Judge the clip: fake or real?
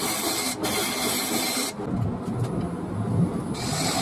real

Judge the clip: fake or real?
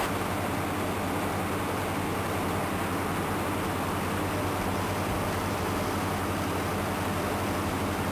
real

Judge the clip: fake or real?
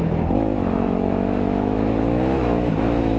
fake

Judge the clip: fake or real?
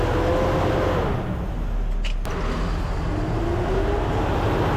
real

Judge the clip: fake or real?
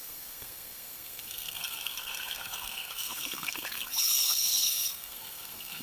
fake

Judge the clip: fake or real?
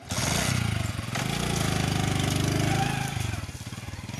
real